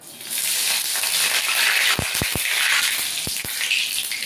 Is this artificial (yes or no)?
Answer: no